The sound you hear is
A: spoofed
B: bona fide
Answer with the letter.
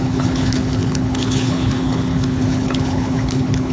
A